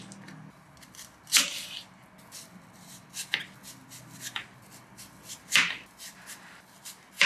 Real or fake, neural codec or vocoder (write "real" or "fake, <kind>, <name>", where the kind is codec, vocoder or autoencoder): real